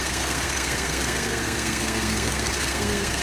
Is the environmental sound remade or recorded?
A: remade